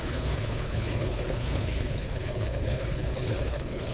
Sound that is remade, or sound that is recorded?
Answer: remade